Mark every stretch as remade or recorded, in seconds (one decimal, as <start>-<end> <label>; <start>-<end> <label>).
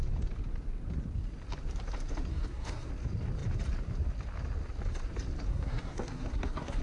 0.0-2.3 recorded; 2.3-2.9 remade; 2.9-5.5 recorded; 5.5-6.8 remade